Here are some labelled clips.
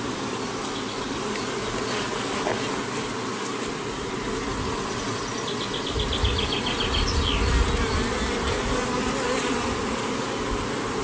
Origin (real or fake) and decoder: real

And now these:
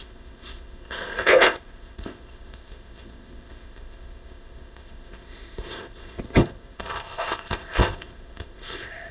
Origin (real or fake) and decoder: fake, codec, ZipCodec